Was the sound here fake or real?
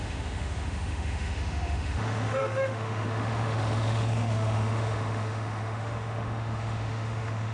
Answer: fake